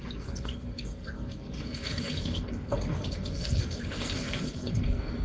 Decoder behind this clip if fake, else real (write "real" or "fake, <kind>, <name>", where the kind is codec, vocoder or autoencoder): fake, codec, SNAC